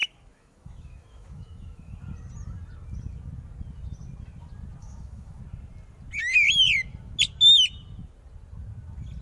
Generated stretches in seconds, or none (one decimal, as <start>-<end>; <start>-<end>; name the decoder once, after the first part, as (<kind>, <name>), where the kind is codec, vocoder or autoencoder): 0.0-2.0 (autoencoder, DAC-VAE); 4.8-5.4